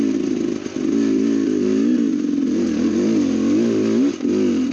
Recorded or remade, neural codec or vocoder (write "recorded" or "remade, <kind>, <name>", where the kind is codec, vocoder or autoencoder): recorded